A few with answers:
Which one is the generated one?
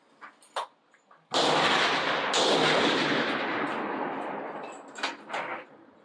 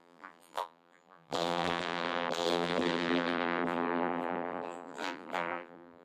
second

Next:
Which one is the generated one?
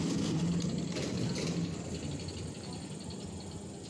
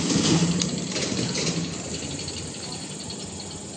second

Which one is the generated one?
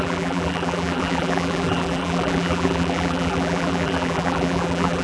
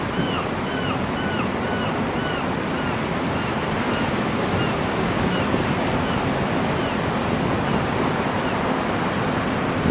first